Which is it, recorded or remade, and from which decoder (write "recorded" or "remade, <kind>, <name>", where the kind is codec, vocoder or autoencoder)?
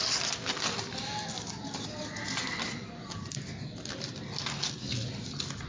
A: recorded